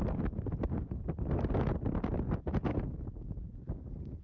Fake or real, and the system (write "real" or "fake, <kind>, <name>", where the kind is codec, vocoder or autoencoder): fake, vocoder, BigVGAN v2